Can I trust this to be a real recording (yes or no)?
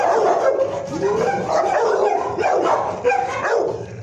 yes